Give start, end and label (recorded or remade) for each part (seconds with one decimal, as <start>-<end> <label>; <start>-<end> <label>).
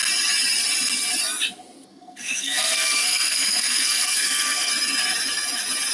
0.0-1.9 recorded; 1.9-4.7 remade; 4.7-5.9 recorded